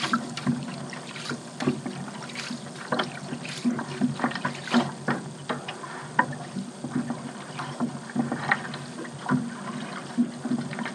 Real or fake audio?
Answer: real